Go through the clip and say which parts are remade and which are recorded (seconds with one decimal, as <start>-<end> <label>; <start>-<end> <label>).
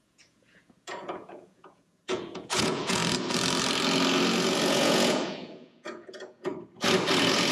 0.0-3.0 remade; 3.0-4.7 recorded; 4.7-6.5 remade; 6.5-7.5 recorded